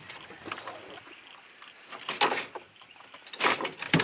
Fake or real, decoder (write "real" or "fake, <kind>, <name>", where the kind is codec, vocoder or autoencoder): real